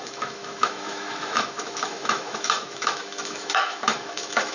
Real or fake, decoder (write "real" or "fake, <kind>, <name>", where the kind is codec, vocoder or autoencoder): fake, autoencoder, DAC-VAE